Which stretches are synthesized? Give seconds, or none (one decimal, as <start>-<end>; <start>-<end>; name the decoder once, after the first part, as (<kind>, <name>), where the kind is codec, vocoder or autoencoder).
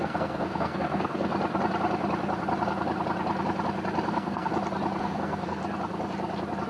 0.0-1.3 (codec, SNAC); 4.1-4.5; 5.0-5.6